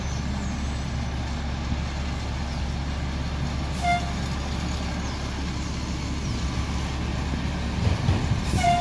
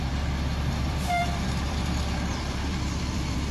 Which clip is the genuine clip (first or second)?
first